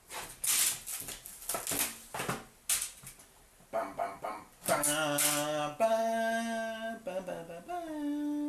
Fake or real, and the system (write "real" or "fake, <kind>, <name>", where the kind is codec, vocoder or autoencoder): real